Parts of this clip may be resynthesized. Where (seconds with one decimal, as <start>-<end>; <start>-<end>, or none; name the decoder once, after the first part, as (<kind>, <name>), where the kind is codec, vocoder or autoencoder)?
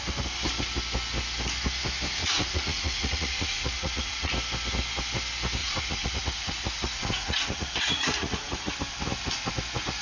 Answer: 2.2-4.3 (vocoder, Vocos); 5.6-8.7